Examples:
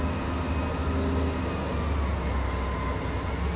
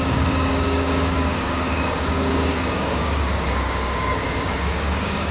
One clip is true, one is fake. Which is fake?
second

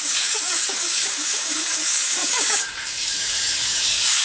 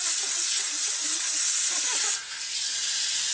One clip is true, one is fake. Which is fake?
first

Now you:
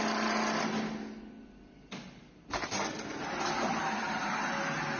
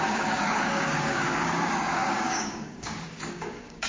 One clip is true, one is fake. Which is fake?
second